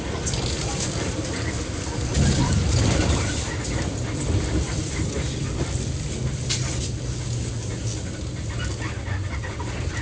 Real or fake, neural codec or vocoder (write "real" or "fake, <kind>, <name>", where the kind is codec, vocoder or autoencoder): real